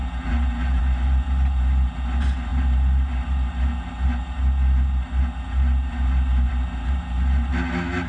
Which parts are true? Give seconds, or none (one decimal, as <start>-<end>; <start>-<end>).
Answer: 0.8-8.1